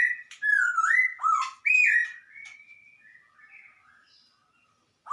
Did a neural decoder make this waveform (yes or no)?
yes